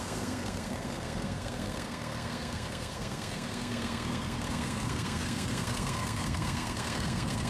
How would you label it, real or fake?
fake